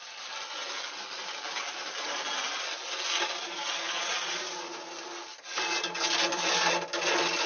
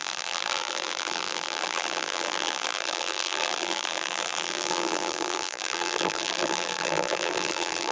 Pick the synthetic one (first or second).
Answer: second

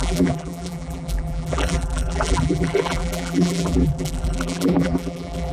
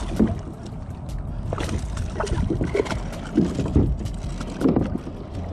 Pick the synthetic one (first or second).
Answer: first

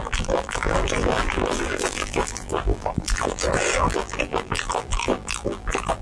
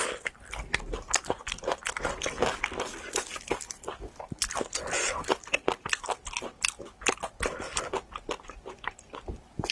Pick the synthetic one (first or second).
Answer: first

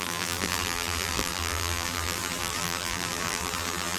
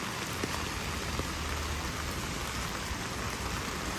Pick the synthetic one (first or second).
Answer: first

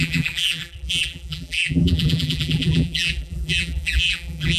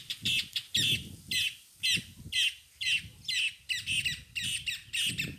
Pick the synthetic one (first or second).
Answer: first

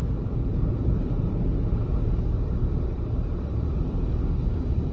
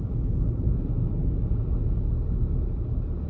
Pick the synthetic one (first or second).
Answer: first